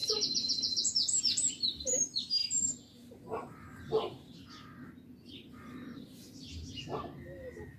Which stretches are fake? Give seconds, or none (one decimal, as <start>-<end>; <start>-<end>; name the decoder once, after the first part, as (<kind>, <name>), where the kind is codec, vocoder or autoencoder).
0.0-1.2 (vocoder, Vocos)